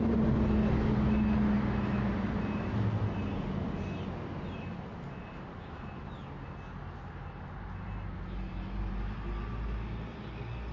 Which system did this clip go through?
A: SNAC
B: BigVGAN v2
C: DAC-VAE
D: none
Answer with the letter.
D